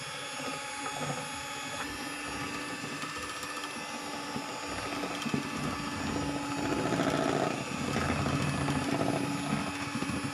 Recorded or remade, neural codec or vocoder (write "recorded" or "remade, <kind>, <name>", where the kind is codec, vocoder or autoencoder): recorded